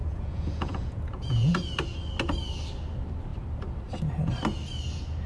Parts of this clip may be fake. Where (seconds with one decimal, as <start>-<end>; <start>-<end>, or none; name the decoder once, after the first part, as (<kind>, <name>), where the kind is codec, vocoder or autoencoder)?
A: 0.0-1.5 (vocoder, Vocos)